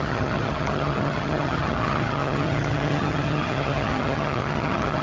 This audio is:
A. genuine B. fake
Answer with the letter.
B